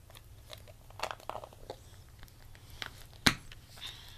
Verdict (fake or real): real